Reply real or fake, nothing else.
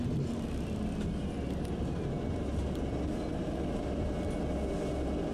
real